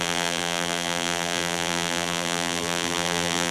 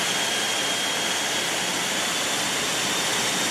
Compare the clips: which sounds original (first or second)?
second